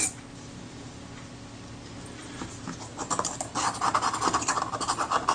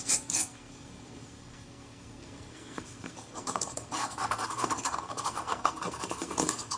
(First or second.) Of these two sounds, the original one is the first